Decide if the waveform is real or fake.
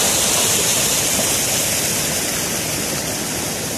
real